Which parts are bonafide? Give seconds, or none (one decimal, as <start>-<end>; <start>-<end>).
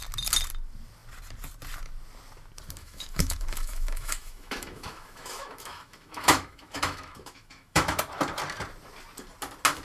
0.0-2.8; 8.0-9.8